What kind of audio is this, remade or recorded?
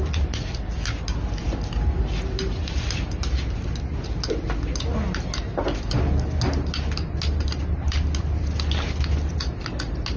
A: recorded